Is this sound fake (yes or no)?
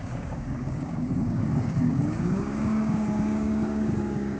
yes